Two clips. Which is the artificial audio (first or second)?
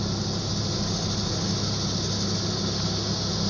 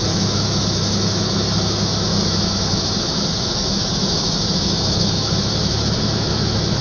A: second